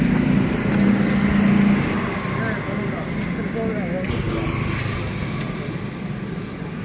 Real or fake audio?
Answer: real